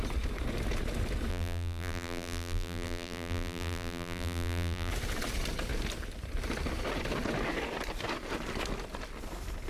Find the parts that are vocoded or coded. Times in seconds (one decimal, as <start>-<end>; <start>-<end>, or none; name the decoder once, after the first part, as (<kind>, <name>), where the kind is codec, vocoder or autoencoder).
1.3-4.9 (vocoder, BigVGAN v2)